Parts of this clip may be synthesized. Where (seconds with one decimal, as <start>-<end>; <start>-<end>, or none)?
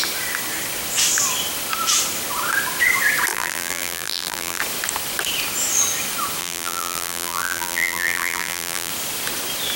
3.3-4.6; 6.4-8.9